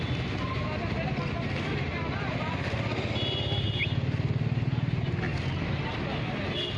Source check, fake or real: real